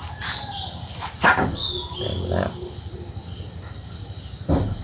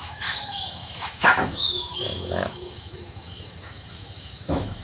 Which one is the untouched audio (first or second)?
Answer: first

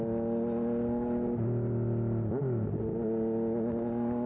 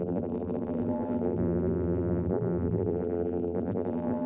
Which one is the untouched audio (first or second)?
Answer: first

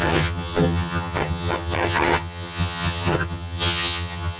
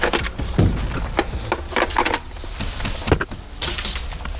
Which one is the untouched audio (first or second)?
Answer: second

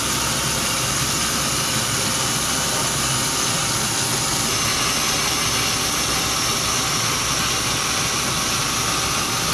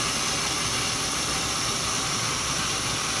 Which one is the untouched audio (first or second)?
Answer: first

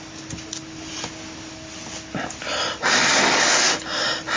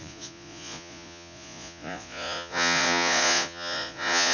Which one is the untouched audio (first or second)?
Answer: first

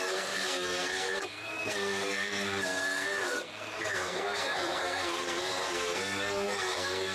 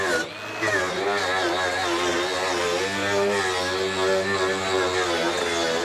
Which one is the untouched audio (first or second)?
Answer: second